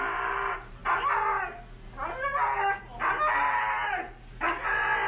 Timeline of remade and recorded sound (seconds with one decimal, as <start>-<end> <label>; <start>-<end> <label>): 0.0-5.1 recorded